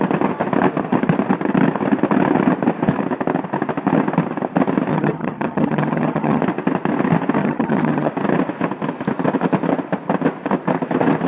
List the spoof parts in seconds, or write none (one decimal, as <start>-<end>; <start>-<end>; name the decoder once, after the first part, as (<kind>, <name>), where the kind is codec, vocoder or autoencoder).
4.9-6.4 (vocoder, HiFi-GAN); 7.4-8.1